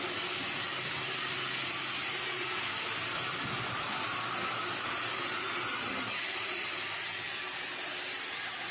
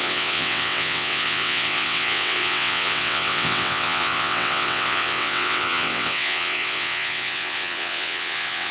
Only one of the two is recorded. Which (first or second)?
first